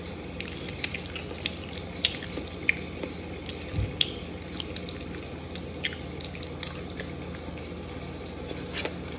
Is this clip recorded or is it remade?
recorded